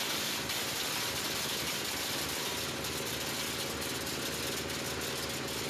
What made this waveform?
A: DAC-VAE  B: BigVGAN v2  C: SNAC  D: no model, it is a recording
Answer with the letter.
D